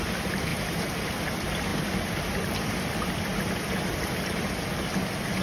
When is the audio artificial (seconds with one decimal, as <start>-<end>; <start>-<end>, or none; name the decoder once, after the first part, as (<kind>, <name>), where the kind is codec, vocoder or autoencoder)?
0.5-1.1 (vocoder, BigVGAN v2); 1.7-2.3